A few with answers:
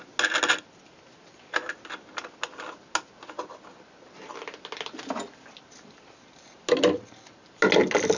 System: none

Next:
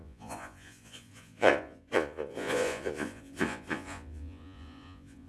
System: vocoder, Vocos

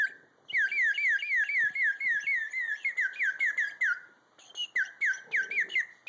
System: none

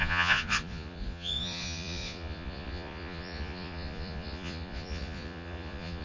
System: vocoder, Vocos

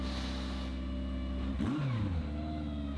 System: none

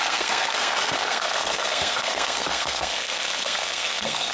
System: codec, SNAC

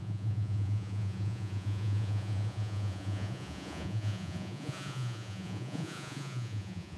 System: vocoder, Vocos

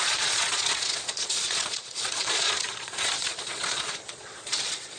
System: vocoder, Vocos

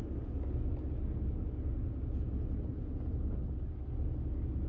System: none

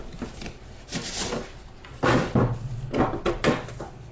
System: none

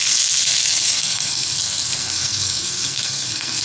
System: codec, SNAC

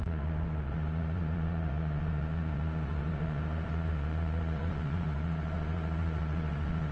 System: vocoder, Vocos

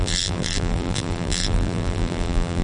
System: vocoder, BigVGAN v2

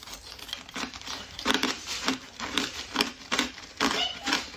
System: vocoder, BigVGAN v2